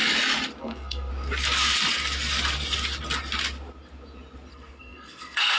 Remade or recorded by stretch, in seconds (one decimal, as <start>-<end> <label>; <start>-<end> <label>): 0.0-0.6 recorded; 0.6-1.1 remade; 1.1-4.5 recorded; 4.5-5.6 remade